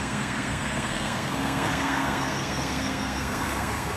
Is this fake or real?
fake